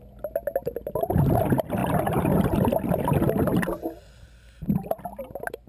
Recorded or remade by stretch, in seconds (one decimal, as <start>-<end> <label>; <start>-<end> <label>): 0.0-5.7 recorded